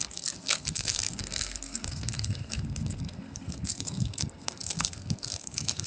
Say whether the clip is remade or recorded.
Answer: remade